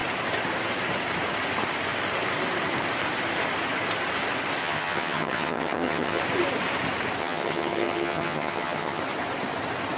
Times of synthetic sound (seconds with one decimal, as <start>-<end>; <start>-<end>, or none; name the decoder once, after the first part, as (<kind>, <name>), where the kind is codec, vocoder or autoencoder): 4.6-6.2 (vocoder, HiFi-GAN); 7.2-9.0